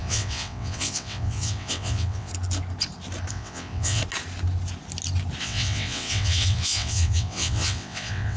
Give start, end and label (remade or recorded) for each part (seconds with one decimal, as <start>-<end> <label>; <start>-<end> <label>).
0.0-2.3 remade; 2.3-3.3 recorded; 3.3-4.0 remade; 4.0-5.4 recorded; 5.4-8.4 remade